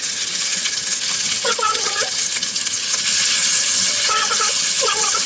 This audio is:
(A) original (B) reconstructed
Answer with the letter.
B